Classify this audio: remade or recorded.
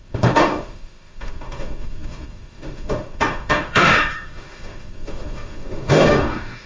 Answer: remade